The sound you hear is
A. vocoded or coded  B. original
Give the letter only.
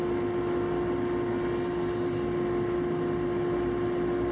B